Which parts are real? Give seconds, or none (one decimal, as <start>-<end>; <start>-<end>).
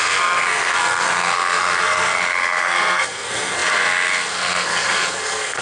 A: none